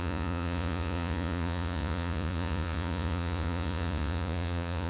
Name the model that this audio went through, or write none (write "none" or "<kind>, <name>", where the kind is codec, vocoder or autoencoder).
vocoder, Vocos